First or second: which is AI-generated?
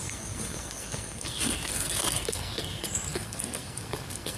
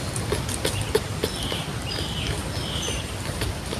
first